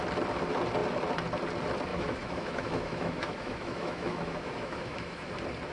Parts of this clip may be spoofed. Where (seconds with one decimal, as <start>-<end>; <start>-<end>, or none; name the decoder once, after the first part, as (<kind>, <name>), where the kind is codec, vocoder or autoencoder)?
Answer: 1.9-5.3 (autoencoder, DAC-VAE)